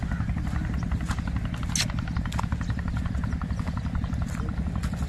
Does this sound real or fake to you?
real